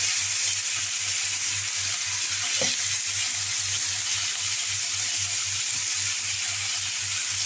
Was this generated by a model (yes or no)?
no